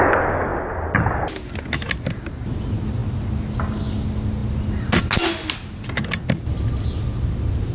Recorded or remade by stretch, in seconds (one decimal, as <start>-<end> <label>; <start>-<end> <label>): 0.0-7.7 recorded